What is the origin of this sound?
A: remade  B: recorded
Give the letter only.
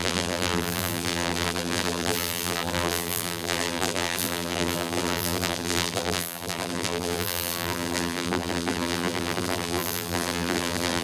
A